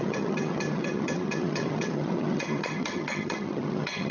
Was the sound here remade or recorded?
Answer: remade